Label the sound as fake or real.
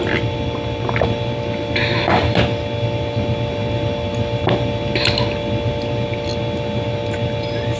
real